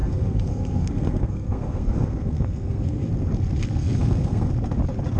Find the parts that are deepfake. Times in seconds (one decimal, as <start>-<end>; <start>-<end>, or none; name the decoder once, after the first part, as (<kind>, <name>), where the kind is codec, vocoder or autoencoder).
0.0-3.1 (codec, SNAC); 3.8-4.5